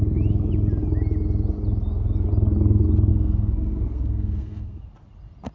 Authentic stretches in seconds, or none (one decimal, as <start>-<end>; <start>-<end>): 0.0-3.1; 4.8-5.5